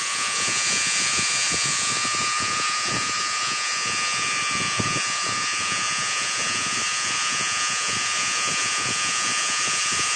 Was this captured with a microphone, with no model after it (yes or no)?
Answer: no